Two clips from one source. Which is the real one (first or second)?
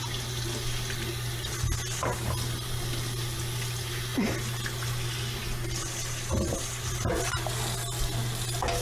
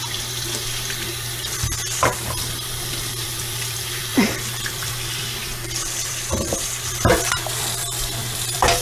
first